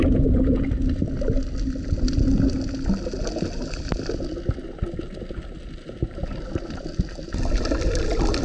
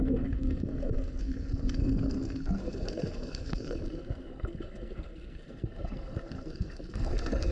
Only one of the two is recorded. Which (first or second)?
first